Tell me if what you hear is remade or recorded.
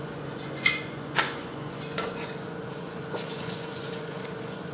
remade